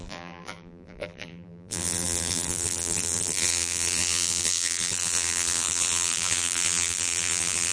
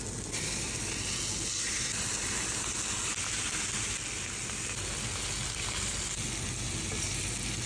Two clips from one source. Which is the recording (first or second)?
second